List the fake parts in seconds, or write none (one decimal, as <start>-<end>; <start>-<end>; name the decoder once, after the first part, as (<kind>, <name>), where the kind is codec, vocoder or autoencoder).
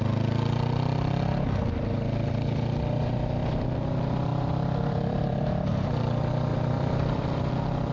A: 4.3-5.7 (vocoder, BigVGAN v2); 6.5-7.5